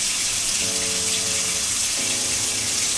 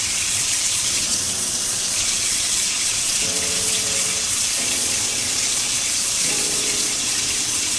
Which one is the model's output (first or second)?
second